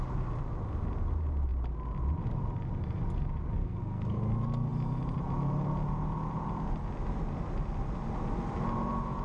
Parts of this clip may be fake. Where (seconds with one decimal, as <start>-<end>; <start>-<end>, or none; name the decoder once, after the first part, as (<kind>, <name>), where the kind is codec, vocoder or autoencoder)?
3.6-4.2 (codec, SNAC)